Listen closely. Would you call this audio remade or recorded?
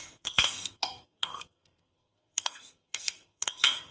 remade